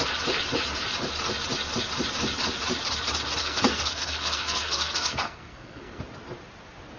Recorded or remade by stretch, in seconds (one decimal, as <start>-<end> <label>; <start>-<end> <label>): 0.0-3.4 recorded; 3.4-6.0 remade; 6.0-7.0 recorded